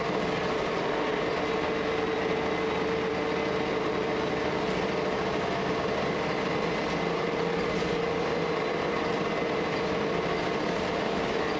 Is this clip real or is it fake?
real